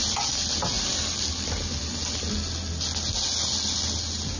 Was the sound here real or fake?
real